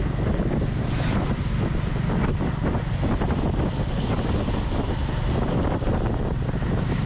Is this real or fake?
real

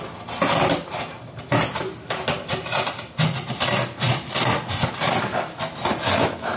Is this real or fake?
real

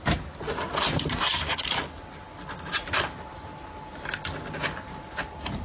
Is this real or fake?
real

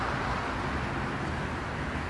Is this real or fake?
real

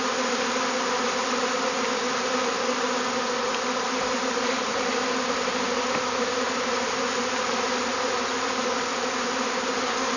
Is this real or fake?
real